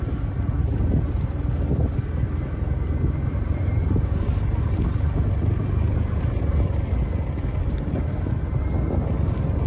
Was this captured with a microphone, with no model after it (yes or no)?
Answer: yes